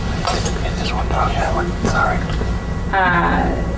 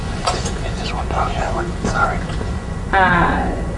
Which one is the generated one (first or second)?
second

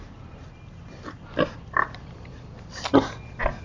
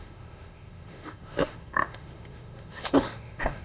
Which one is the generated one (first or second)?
second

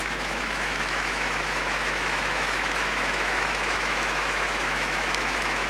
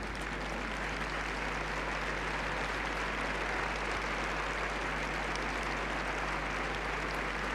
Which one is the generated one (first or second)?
first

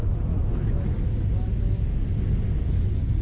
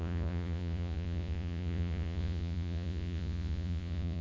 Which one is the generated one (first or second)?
second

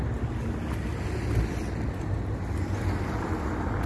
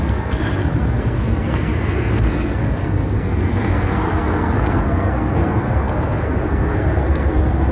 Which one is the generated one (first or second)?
second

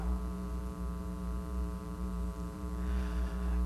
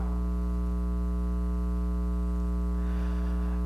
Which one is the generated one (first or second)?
first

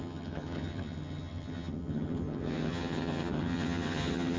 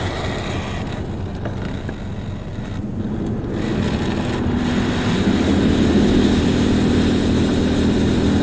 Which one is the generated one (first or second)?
first